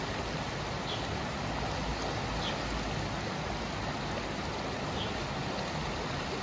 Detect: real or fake real